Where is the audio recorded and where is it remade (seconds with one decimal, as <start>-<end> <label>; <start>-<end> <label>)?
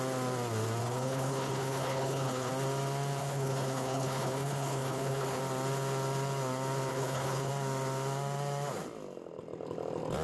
0.0-0.8 recorded; 0.8-2.5 remade; 2.5-3.2 recorded; 3.2-5.4 remade; 5.4-6.9 recorded; 6.9-7.5 remade; 7.5-10.2 recorded